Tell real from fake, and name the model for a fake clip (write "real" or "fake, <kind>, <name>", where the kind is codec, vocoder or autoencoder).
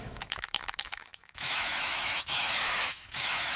fake, autoencoder, DAC-VAE